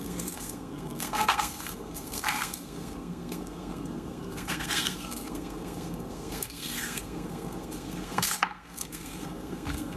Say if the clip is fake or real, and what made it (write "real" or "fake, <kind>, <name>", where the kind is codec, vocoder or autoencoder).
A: fake, codec, SNAC